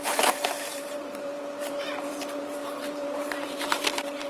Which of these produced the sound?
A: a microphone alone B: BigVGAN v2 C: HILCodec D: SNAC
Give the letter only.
B